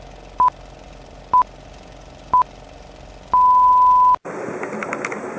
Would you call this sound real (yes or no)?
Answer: yes